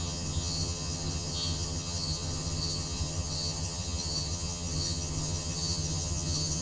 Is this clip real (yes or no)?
no